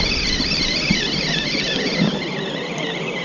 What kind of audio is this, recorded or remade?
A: recorded